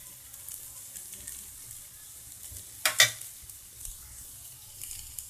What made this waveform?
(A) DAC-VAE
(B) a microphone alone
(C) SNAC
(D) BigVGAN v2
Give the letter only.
B